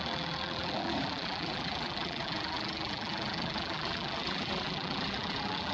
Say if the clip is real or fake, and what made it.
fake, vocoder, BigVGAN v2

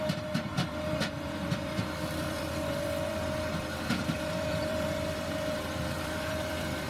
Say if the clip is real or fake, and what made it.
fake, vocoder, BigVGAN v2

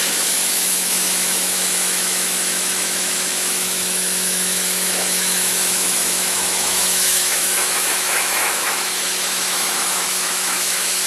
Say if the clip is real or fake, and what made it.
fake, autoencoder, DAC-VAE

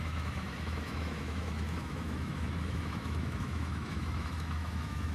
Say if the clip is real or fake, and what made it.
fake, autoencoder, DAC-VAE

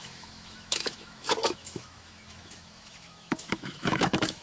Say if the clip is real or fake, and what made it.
fake, autoencoder, DAC-VAE